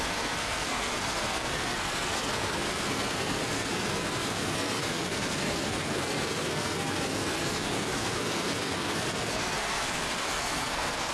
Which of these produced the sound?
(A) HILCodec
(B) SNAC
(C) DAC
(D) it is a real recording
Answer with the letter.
B